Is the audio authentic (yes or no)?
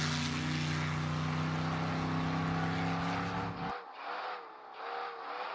yes